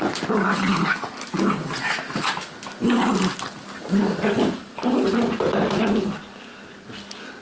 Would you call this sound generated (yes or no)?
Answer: no